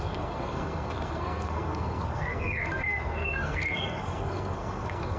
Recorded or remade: remade